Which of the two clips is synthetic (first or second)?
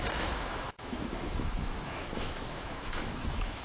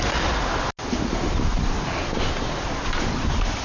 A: first